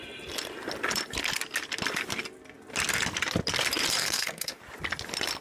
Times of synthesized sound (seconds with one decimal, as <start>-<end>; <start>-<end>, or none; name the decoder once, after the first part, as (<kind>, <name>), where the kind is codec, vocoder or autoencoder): 4.0-4.6 (codec, SNAC)